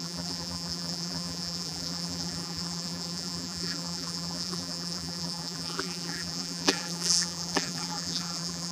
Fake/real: fake